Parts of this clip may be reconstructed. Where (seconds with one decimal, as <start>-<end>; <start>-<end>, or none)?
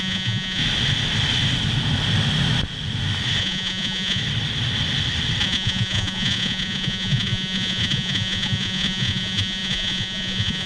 0.0-0.6; 3.4-4.2; 5.4-10.7